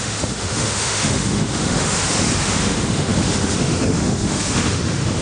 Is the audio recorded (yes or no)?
no